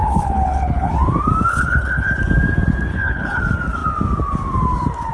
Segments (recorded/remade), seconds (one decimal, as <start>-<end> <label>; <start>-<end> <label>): 0.0-0.9 remade; 0.9-1.5 recorded; 1.5-2.2 remade; 2.2-2.9 recorded; 2.9-3.4 remade; 3.4-5.1 recorded